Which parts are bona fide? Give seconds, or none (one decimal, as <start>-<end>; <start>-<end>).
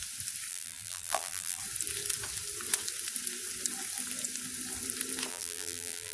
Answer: 0.0-0.5; 1.6-5.3